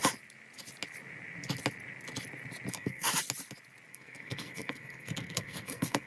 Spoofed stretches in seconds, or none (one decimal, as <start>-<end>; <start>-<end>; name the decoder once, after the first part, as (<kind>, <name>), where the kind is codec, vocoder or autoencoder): 2.7-3.1 (codec, SNAC); 3.9-6.1